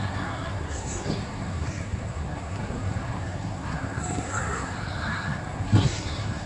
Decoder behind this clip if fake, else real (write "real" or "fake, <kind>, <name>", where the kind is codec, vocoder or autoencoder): fake, codec, SNAC